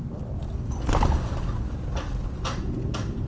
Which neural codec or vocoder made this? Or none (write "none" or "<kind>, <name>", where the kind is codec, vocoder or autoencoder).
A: none